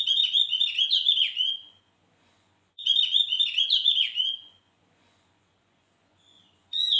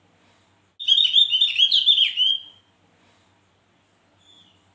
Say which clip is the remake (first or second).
first